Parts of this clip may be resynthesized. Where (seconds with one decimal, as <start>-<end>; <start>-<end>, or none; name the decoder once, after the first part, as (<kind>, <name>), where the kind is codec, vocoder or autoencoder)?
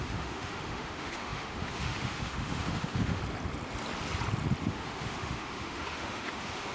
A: 0.0-3.2 (autoencoder, DAC-VAE); 4.6-6.7